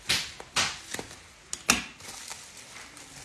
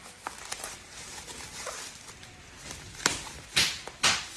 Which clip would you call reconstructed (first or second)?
second